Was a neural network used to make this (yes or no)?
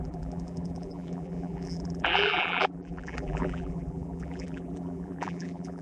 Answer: yes